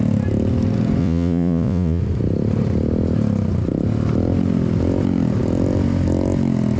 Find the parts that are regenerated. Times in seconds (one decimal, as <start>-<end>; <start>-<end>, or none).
1.0-2.0